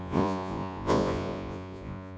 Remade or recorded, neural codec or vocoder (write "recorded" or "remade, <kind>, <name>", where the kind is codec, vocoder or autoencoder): remade, vocoder, Vocos